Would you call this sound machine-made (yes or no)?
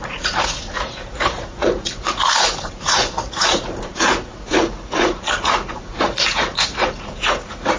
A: yes